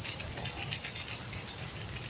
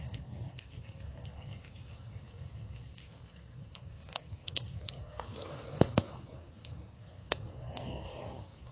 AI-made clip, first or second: second